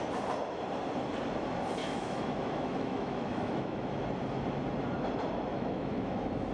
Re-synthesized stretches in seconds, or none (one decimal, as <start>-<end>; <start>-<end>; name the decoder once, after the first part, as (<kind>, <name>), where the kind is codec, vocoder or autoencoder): 1.8-4.0 (autoencoder, DAC-VAE); 5.5-6.5